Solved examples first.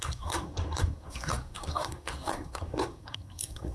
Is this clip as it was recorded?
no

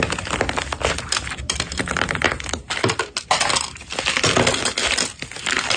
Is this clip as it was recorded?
yes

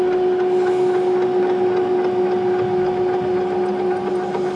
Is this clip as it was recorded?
yes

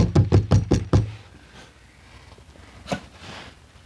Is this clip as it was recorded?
yes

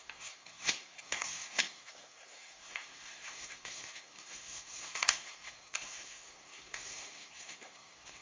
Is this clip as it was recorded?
no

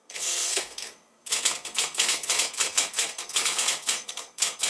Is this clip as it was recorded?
no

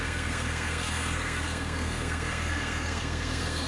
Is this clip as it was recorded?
no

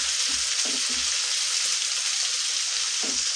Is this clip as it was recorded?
yes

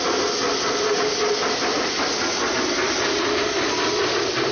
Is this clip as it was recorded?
yes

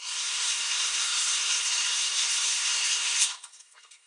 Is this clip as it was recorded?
no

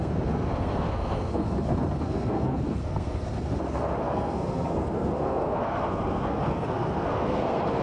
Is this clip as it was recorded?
no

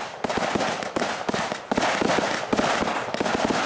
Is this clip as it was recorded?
yes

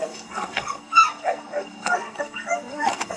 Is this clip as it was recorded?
no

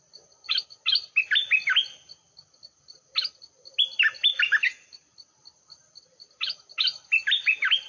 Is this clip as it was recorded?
yes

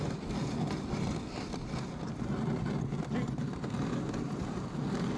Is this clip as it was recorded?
yes